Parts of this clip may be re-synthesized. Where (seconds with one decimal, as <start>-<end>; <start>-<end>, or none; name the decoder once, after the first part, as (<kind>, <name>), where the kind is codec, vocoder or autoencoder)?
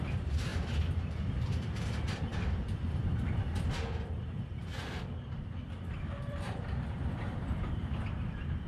0.0-0.5 (vocoder, BigVGAN v2); 1.1-2.3; 5.7-8.7